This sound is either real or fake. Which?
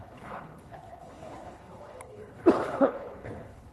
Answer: fake